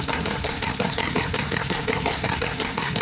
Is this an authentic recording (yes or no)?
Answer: no